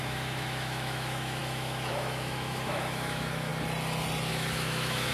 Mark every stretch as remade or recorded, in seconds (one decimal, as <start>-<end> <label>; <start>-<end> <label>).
0.0-3.5 remade; 3.5-4.3 recorded; 4.3-5.1 remade